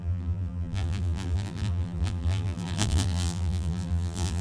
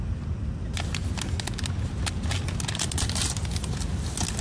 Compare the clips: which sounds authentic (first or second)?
second